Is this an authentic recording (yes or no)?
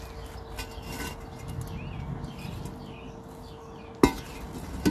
yes